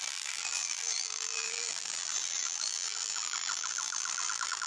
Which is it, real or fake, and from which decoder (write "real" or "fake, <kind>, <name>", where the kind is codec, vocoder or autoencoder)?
fake, vocoder, BigVGAN v2